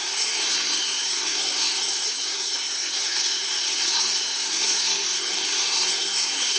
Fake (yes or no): yes